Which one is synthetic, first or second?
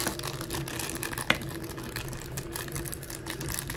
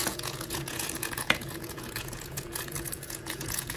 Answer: second